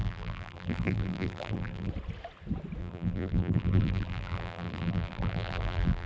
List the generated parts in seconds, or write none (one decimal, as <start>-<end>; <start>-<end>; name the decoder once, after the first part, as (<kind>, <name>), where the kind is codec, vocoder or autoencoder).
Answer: 0.0-1.9 (vocoder, BigVGAN v2); 2.8-6.1